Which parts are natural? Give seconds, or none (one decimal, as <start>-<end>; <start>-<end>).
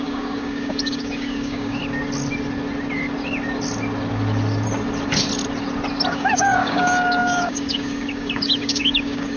1.8-6.1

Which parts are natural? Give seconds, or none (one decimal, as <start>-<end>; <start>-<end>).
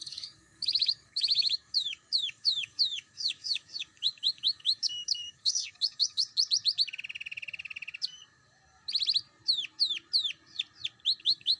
6.3-11.2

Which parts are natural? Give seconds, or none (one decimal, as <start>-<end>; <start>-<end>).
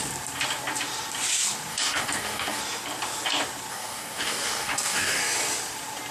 0.0-1.7; 2.6-3.7; 5.2-6.1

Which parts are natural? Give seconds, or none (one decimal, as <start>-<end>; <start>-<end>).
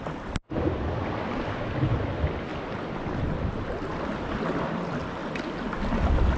0.0-6.4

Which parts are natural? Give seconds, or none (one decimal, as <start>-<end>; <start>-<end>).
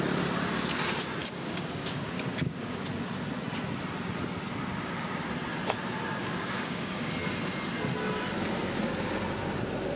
0.0-1.2; 2.8-6.2; 7.1-10.0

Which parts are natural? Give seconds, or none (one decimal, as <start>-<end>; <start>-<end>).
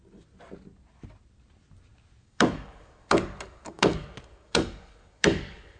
0.0-2.2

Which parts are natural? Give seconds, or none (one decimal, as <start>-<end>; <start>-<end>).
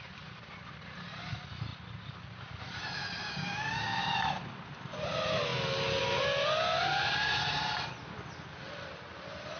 0.0-3.2; 4.0-9.6